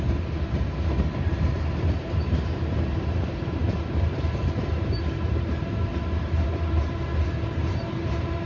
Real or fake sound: fake